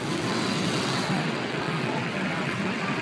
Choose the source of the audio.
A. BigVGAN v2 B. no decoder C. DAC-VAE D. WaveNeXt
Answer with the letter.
D